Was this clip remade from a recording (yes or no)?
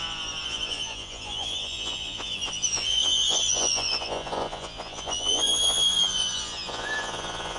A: yes